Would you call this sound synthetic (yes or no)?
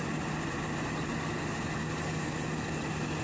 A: no